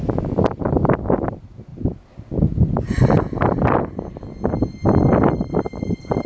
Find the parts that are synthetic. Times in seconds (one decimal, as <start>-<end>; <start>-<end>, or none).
none